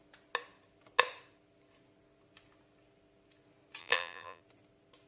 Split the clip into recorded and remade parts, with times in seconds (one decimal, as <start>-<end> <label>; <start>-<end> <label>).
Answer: 0.0-3.8 recorded; 3.8-4.4 remade; 4.4-5.1 recorded